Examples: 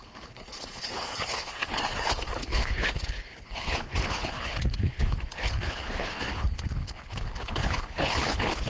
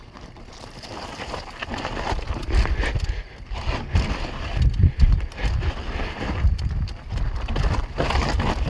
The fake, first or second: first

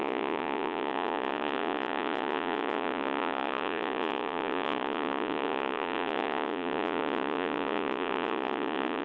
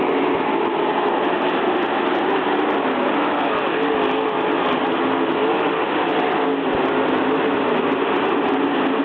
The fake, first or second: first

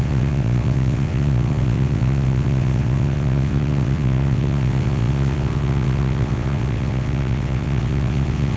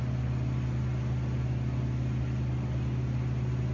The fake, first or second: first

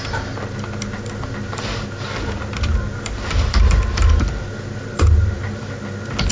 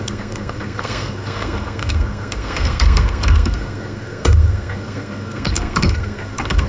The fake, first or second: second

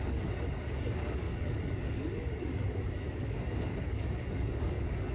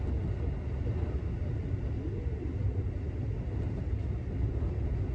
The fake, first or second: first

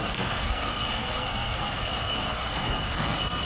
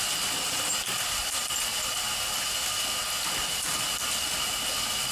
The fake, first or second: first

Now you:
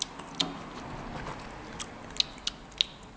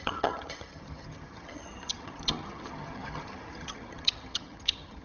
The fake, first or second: second